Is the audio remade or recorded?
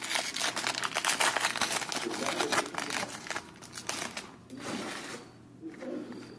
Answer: recorded